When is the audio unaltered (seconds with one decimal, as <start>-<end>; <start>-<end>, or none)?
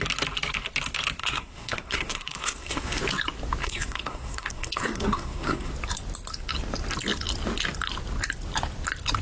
0.0-1.2; 3.0-3.6; 5.7-9.2